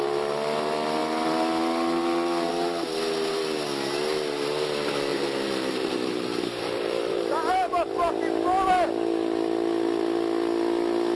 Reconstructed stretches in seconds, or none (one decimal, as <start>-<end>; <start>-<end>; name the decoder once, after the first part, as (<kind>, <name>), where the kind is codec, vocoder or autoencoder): 5.1-8.1 (vocoder, BigVGAN v2)